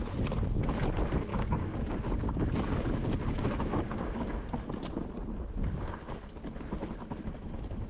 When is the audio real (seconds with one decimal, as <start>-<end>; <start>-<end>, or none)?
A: 0.0-1.3; 2.5-3.2; 4.3-7.9